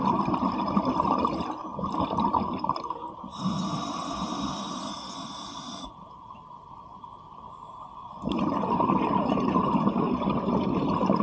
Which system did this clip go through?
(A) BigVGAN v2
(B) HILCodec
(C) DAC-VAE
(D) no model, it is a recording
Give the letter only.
D